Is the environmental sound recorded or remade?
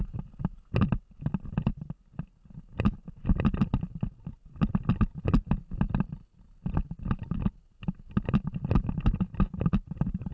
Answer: recorded